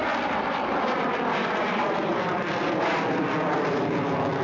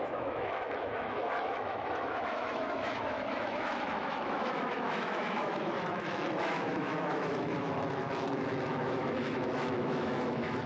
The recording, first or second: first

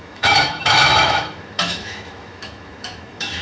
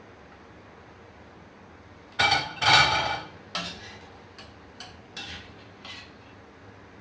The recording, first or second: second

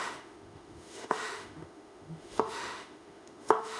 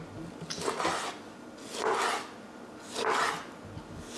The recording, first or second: second